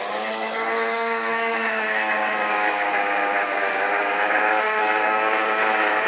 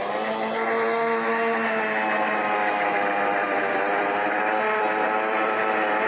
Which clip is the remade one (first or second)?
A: first